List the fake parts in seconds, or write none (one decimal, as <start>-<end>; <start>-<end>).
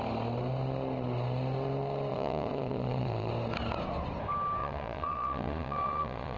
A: 2.1-3.3; 4.6-6.4